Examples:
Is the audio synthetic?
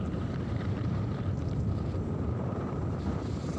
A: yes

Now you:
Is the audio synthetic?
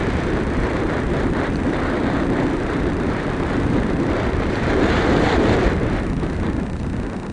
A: yes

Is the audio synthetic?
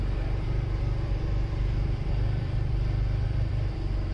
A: yes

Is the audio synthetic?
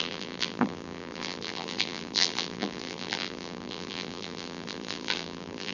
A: yes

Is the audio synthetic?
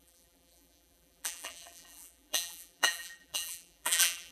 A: yes